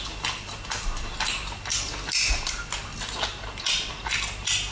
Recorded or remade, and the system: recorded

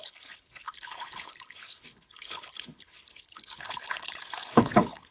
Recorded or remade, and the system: remade, codec, HILCodec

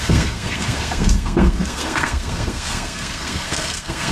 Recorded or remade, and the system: remade, codec, SNAC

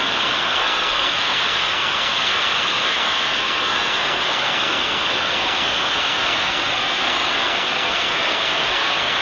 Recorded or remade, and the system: remade, codec, SNAC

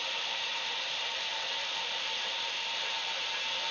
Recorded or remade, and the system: remade, vocoder, BigVGAN v2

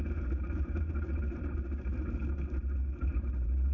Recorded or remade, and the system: remade, vocoder, BigVGAN v2